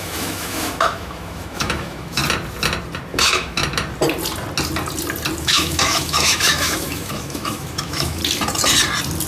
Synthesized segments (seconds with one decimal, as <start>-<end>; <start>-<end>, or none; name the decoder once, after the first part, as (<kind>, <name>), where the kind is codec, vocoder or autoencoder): 0.0-2.2 (autoencoder, DAC-VAE); 3.1-3.6; 5.4-8.2